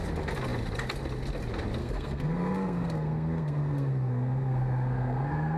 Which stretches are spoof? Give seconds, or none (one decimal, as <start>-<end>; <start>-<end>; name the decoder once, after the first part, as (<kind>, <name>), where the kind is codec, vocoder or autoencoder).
1.8-5.6 (codec, SNAC)